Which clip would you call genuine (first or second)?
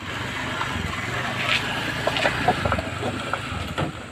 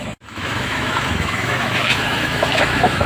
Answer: first